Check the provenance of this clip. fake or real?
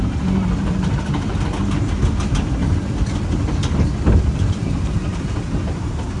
fake